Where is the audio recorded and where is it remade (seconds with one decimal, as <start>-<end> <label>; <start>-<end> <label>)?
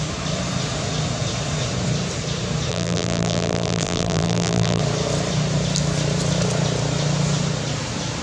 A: 0.0-2.7 recorded; 2.7-4.8 remade; 4.8-8.2 recorded